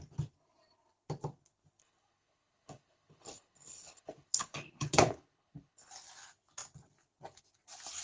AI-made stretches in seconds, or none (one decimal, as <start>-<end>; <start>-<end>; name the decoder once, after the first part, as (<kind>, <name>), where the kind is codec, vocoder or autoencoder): 1.8-5.9 (codec, HILCodec)

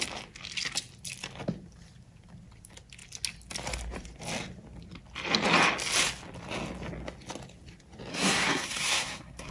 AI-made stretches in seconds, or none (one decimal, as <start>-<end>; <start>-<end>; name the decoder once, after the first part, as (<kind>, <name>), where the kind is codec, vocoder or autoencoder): 8.1-9.5 (codec, SNAC)

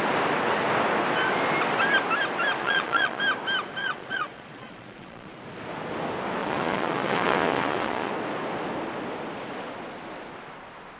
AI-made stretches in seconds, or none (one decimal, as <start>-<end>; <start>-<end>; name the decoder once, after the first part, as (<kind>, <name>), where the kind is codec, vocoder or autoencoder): 2.6-3.2 (vocoder, Vocos); 3.8-5.4; 6.4-8.1

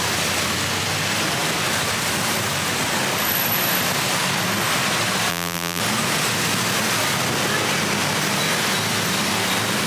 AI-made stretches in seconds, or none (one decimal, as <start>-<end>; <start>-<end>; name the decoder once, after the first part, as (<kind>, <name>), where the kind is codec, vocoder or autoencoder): 5.3-5.8 (vocoder, BigVGAN v2)

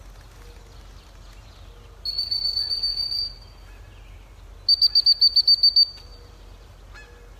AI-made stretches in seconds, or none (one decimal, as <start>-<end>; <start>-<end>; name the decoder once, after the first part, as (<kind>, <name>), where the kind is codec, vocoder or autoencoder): none

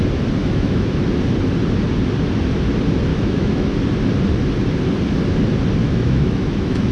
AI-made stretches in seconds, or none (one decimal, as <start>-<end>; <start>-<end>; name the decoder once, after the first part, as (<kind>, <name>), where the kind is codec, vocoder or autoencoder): 0.4-1.0 (autoencoder, DAC-VAE); 3.1-3.7; 5.8-6.9

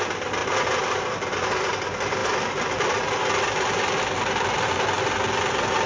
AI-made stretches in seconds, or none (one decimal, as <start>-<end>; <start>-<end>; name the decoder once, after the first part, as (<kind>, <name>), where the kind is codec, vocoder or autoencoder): none